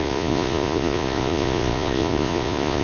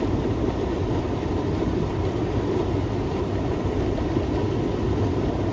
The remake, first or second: first